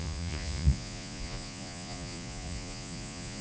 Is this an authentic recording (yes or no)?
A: no